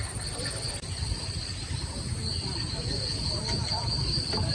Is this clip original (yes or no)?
yes